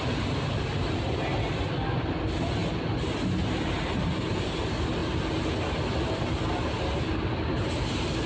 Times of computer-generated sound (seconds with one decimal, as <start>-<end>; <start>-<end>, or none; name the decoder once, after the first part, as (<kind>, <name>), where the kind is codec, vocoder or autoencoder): none

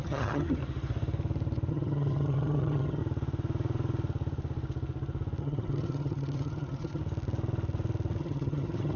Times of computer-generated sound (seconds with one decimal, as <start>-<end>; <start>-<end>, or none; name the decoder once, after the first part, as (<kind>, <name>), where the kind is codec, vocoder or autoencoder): 0.0-0.6 (vocoder, HiFi-GAN); 1.7-3.0; 5.4-7.0; 8.2-9.0

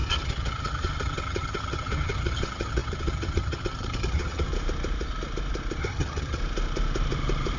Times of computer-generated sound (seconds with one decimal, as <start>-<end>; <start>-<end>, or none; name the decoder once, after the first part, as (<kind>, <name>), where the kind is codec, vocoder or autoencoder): 0.0-4.5 (vocoder, HiFi-GAN); 5.8-6.4

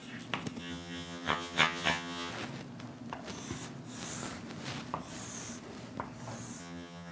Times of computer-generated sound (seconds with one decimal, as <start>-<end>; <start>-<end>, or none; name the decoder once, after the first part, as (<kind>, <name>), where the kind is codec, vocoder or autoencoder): 0.6-2.3 (vocoder, HiFi-GAN); 6.6-7.1

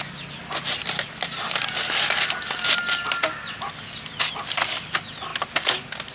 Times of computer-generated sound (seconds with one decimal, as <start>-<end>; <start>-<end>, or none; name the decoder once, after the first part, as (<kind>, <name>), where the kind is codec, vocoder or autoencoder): none

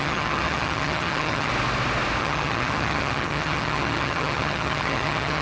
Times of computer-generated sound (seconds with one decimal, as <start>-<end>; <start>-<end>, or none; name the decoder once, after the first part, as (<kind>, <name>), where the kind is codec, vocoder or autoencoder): 0.0-1.5 (vocoder, HiFi-GAN); 2.2-5.4

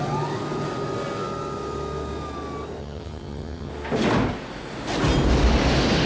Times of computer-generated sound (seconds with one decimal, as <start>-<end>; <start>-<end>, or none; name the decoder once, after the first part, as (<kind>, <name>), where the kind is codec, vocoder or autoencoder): 2.8-3.7 (vocoder, HiFi-GAN)

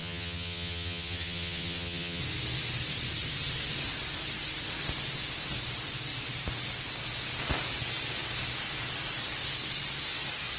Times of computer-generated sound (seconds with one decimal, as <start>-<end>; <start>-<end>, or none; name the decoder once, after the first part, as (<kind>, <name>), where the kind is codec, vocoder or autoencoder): 0.0-2.2 (vocoder, HiFi-GAN)